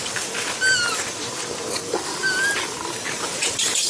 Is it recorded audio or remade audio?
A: recorded